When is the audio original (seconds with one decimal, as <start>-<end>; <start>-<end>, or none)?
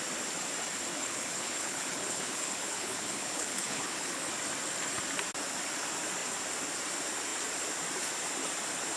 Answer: 0.0-0.9; 4.3-9.0